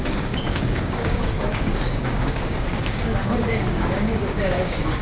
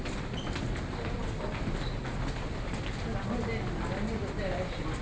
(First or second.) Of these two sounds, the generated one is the first